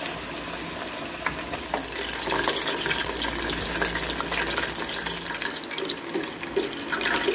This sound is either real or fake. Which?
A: real